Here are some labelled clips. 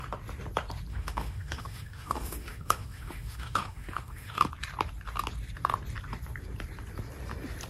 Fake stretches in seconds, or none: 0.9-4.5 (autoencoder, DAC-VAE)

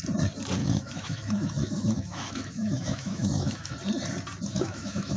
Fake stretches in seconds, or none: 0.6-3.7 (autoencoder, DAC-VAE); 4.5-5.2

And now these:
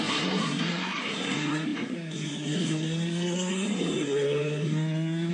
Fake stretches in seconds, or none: 0.0-5.3 (codec, SNAC)

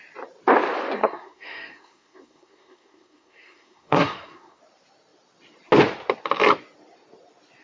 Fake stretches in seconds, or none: 1.0-4.6 (codec, SNAC)